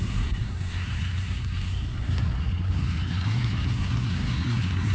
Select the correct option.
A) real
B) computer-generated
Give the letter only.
B